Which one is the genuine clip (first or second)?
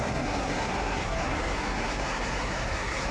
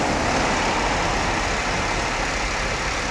second